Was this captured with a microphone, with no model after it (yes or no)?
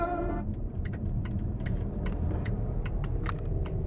no